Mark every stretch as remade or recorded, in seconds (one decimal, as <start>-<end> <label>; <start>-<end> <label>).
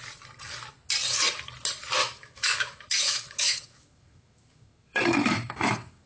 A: 0.0-2.0 recorded; 2.0-6.1 remade